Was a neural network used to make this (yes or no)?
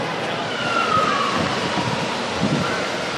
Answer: no